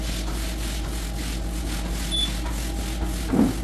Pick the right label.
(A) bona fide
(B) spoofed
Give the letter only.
A